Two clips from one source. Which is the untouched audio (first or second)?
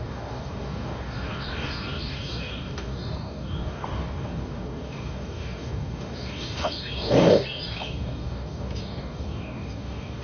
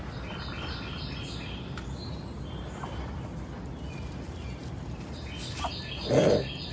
second